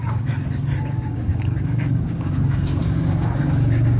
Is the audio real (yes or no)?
no